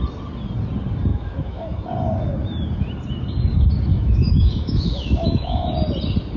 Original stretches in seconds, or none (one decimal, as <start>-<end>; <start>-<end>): 0.0-1.1; 1.9-3.9; 5.7-6.4